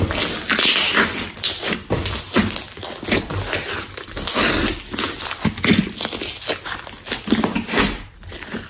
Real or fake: real